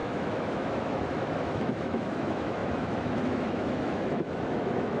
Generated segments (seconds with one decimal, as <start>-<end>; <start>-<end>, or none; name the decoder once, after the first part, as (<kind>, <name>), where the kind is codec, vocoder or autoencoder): 0.0-5.0 (autoencoder, DAC-VAE)